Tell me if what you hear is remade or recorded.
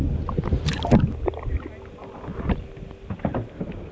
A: recorded